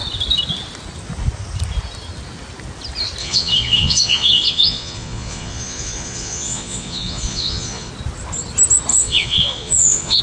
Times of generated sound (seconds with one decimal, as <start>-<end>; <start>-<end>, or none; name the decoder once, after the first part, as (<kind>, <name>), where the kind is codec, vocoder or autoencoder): 3.2-7.9 (vocoder, Vocos); 8.9-10.2